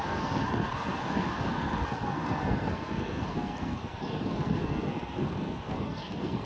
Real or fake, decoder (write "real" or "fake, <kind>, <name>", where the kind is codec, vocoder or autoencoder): fake, codec, SNAC